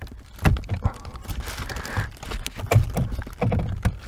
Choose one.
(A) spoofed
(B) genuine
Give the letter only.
A